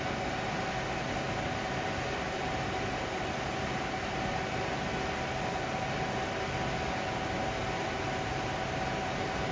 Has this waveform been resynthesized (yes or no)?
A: no